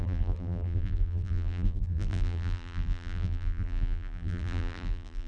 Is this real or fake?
fake